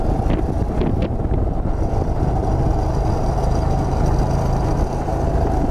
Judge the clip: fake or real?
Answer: real